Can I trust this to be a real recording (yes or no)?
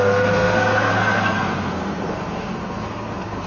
no